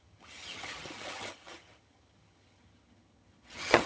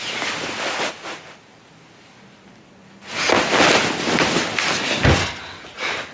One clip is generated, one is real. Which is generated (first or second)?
first